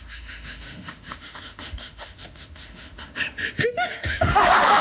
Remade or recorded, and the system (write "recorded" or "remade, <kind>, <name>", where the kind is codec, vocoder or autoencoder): remade, autoencoder, DAC-VAE